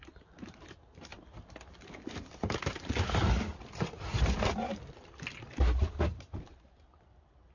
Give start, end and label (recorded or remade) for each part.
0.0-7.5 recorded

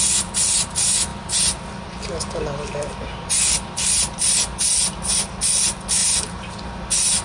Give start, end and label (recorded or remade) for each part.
0.0-6.0 recorded; 6.0-6.5 remade; 6.5-7.2 recorded

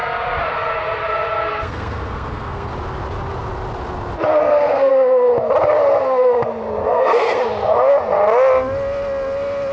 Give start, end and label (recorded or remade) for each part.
0.0-1.5 recorded; 1.5-2.7 remade; 2.7-4.4 recorded; 4.4-4.9 remade; 4.9-6.8 recorded; 6.8-7.4 remade; 7.4-9.7 recorded

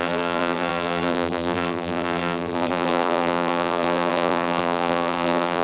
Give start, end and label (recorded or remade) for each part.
0.0-5.6 remade

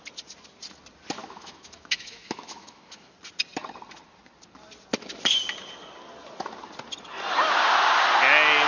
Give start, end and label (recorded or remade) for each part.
0.0-1.2 recorded; 1.2-3.1 remade; 3.1-8.7 recorded

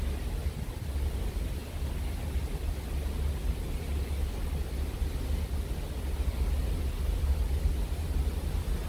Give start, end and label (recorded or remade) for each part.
0.0-8.9 recorded

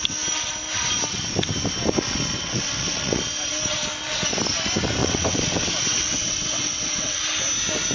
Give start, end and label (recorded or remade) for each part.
0.0-2.4 recorded; 2.4-3.2 remade; 3.2-5.0 recorded; 5.0-7.2 remade; 7.2-7.9 recorded